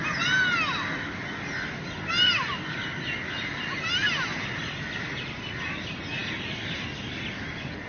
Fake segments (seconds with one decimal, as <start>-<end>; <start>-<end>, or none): none